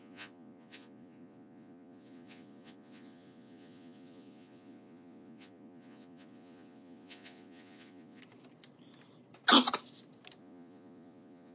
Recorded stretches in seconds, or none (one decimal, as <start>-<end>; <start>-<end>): 8.2-10.4